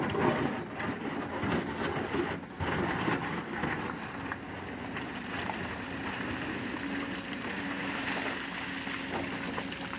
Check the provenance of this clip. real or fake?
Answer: real